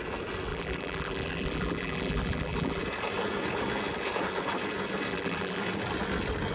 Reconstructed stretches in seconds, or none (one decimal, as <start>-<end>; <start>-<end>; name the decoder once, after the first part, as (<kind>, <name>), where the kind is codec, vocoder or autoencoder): 0.5-2.8 (vocoder, BigVGAN v2); 5.1-5.6